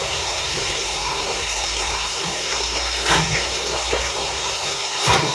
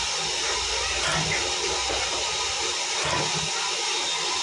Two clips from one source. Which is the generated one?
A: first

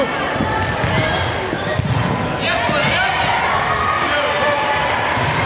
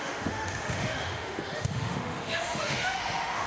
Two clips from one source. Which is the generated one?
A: second